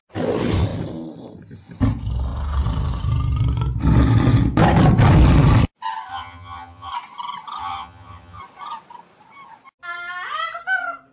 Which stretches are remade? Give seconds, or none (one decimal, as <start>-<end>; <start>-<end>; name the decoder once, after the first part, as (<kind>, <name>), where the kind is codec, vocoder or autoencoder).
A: 6.1-6.9 (vocoder, HiFi-GAN); 7.6-8.4